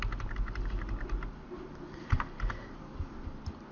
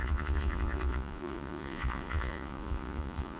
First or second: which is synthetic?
second